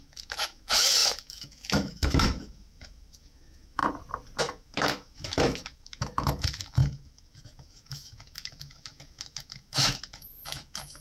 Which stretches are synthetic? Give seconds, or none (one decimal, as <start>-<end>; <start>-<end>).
0.0-3.8; 4.4-11.0